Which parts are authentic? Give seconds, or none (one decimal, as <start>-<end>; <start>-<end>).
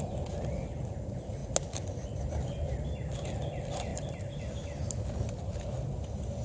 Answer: 0.0-3.9; 4.4-6.4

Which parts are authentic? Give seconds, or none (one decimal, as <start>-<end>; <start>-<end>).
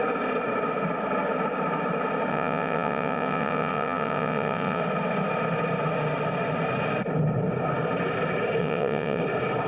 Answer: 0.0-2.3; 4.8-8.6; 9.2-9.7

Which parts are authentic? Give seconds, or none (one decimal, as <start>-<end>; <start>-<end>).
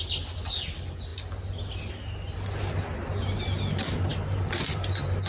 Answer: 0.0-5.3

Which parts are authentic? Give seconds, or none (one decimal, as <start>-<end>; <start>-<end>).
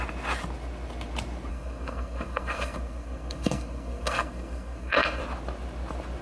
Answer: 0.0-1.5; 5.2-6.2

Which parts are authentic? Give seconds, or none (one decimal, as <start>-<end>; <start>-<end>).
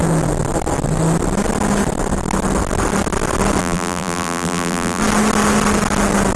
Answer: 0.0-3.6; 5.0-6.4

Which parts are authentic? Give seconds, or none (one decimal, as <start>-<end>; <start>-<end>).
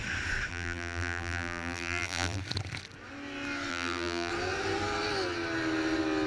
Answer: 0.0-0.5; 2.4-3.7; 4.3-6.3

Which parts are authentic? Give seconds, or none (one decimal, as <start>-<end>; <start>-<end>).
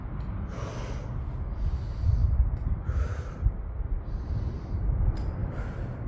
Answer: 0.0-5.4